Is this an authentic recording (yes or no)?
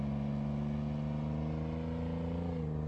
yes